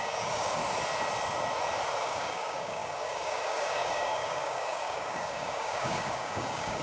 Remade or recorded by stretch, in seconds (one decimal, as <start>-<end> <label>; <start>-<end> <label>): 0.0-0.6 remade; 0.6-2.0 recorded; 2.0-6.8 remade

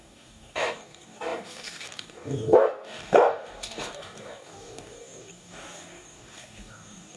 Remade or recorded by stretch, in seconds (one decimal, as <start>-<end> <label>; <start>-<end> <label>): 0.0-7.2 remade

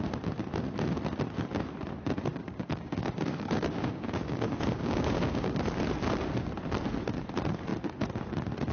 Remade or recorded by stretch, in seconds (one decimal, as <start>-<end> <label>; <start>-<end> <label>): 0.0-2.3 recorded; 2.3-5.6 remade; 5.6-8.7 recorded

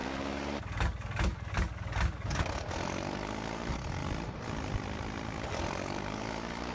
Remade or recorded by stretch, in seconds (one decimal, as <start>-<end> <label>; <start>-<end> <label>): 0.0-4.0 remade; 4.0-5.3 recorded; 5.3-6.7 remade

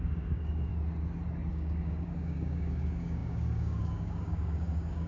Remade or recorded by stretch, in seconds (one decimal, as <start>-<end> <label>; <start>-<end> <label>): 0.0-0.7 remade; 0.7-1.5 recorded; 1.5-5.1 remade